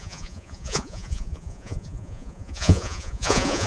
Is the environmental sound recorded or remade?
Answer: remade